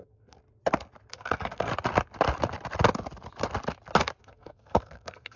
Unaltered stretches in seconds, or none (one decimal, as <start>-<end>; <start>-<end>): 0.4-1.1; 1.7-4.2

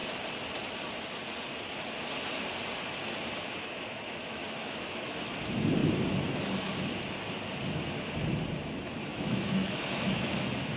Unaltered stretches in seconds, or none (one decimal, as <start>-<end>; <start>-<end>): 0.0-3.6; 5.8-8.7

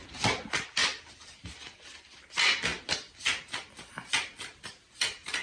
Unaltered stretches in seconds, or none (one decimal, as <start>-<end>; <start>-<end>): 0.0-5.4

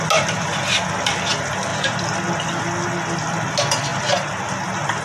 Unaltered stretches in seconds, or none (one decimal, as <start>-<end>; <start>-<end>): 0.0-5.0

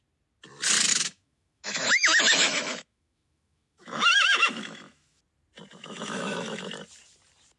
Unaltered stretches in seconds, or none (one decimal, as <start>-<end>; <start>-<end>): 0.0-0.9; 5.2-5.7; 6.7-7.6

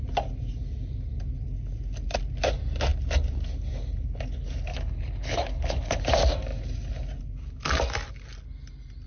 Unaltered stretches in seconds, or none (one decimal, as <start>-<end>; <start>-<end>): 0.0-4.7; 6.0-9.1